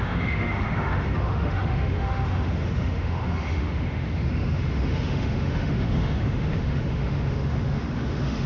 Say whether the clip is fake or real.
fake